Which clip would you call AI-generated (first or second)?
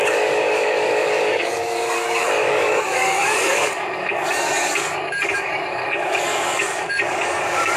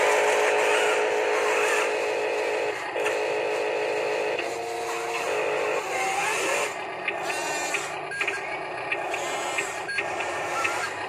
first